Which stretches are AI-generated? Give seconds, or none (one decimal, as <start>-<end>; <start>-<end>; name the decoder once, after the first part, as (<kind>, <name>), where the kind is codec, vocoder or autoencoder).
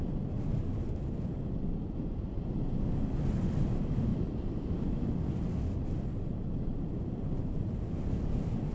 none